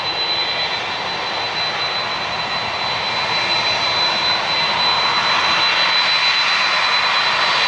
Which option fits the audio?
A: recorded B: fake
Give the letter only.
A